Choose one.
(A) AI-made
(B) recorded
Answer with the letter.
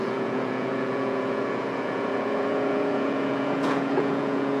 A